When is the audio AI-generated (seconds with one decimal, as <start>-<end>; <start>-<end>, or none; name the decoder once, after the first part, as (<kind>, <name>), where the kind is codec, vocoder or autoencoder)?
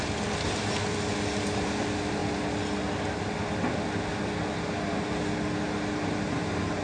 none